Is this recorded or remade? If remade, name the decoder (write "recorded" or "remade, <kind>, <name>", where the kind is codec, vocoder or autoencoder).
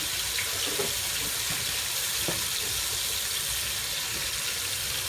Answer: recorded